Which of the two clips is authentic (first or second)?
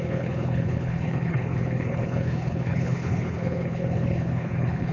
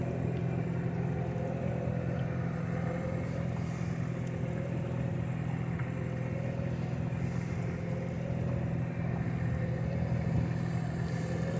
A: second